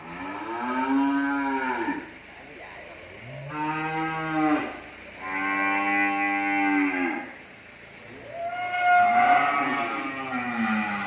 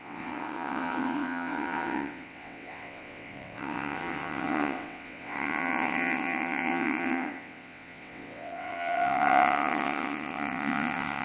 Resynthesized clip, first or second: second